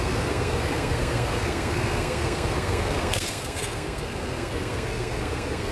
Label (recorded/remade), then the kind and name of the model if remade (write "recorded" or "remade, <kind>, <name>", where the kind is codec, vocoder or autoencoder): remade, codec, SNAC